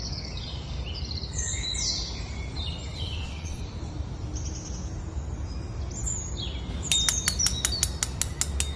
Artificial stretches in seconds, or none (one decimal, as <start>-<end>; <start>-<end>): 2.9-3.6